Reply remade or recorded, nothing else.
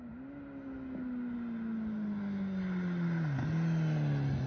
recorded